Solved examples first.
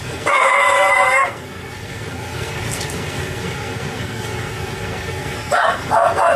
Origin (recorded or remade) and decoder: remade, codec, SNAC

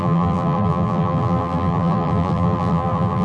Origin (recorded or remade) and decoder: remade, vocoder, BigVGAN v2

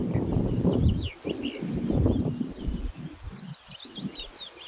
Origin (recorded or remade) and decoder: recorded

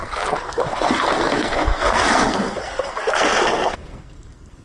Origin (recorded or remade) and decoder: remade, codec, SNAC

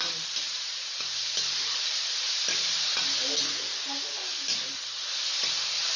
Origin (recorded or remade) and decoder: recorded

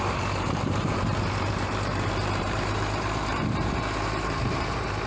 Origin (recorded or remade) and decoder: remade, vocoder, BigVGAN v2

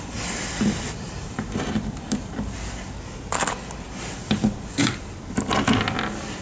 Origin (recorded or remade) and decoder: recorded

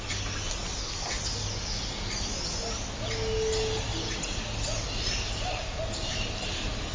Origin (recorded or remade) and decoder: recorded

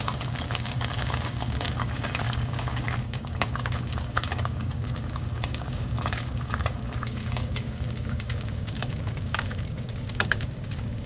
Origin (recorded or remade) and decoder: remade, codec, DAC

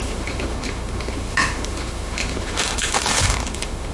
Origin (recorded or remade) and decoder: remade, autoencoder, DAC-VAE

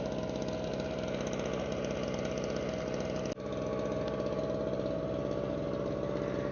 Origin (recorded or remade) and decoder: recorded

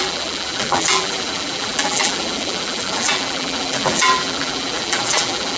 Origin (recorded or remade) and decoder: remade, vocoder, BigVGAN v2